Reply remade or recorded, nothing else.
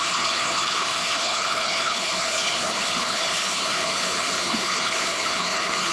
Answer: remade